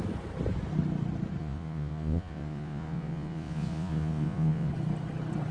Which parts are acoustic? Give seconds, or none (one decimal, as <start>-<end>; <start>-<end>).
0.0-1.4; 4.7-5.5